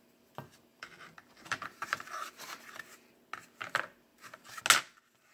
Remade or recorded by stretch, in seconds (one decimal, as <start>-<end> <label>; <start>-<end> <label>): 0.0-0.7 recorded; 0.7-2.3 remade; 2.3-4.1 recorded; 4.1-4.6 remade; 4.6-5.3 recorded